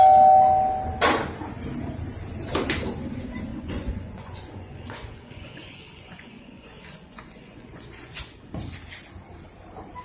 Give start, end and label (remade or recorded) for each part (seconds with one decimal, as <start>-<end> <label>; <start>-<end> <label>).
0.0-3.5 recorded; 3.5-8.4 remade; 8.4-10.0 recorded

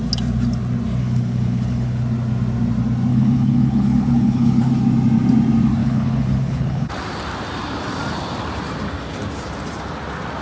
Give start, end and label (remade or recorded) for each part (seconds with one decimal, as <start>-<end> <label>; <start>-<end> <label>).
0.0-1.0 recorded; 1.0-2.0 remade; 2.0-3.1 recorded; 3.1-4.7 remade; 4.7-5.8 recorded; 5.8-6.9 remade; 6.9-10.4 recorded